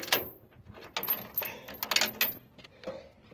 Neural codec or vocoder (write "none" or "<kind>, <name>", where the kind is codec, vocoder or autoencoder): none